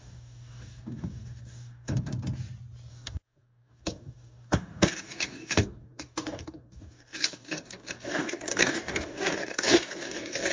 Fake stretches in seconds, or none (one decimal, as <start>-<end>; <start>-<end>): 0.0-2.1; 2.9-10.5